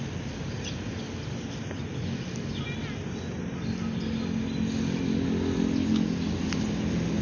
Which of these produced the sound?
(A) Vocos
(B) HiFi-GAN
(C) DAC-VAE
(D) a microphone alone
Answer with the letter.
D